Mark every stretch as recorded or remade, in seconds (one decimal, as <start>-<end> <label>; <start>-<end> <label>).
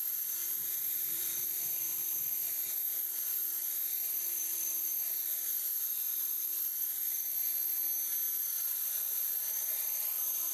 0.0-7.8 remade; 7.8-8.4 recorded; 8.4-10.5 remade